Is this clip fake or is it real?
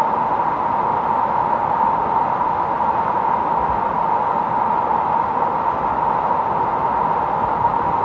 real